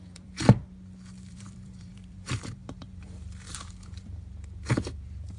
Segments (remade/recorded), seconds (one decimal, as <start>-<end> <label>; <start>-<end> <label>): 0.0-0.6 remade; 0.6-1.3 recorded; 1.3-5.4 remade

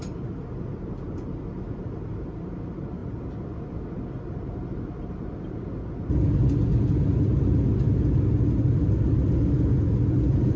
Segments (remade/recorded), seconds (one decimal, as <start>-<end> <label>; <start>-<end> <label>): 0.0-10.6 recorded

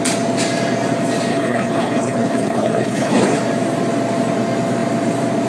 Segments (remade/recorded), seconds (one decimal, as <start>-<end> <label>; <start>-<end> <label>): 0.0-1.3 recorded; 1.3-3.4 remade; 3.4-5.5 recorded

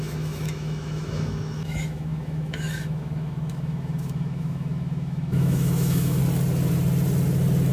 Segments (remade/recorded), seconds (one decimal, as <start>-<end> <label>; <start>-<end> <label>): 0.0-6.2 remade; 6.2-7.7 recorded

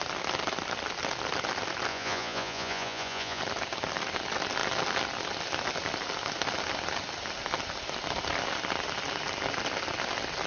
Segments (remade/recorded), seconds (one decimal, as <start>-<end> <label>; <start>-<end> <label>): 0.0-1.9 recorded; 1.9-3.4 remade; 3.4-10.5 recorded

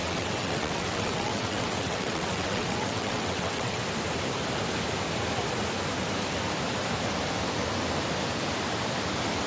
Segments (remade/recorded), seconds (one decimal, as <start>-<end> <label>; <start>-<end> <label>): 0.0-3.8 remade; 3.8-9.5 recorded

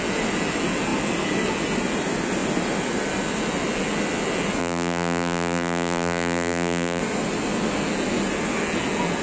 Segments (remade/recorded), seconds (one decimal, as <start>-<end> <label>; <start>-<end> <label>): 0.0-4.6 recorded; 4.6-7.0 remade; 7.0-9.2 recorded

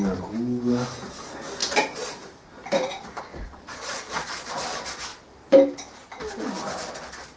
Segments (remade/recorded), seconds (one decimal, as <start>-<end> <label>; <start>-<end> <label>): 0.0-1.6 recorded; 1.6-2.2 remade; 2.2-3.3 recorded; 3.3-4.5 remade; 4.5-7.4 recorded